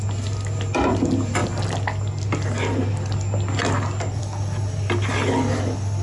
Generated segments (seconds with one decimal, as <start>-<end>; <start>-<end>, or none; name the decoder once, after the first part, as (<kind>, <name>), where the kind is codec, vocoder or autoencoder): none